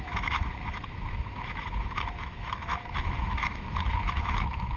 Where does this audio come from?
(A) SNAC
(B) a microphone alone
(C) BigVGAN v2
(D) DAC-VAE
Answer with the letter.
D